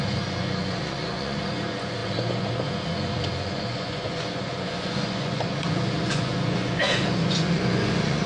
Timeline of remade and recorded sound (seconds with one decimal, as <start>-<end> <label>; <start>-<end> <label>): 0.0-8.3 remade